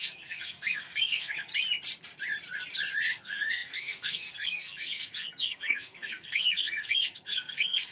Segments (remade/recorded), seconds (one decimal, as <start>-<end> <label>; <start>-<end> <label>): 0.0-1.5 remade; 1.5-3.1 recorded; 3.1-7.9 remade